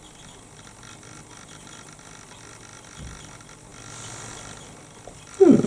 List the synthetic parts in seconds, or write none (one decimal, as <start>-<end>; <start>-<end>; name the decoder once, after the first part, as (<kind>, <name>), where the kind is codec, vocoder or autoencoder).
none

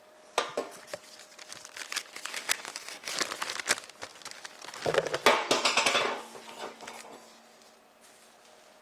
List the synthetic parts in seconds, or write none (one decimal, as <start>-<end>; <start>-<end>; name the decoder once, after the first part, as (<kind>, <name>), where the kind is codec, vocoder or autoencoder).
2.3-3.1 (codec, DAC)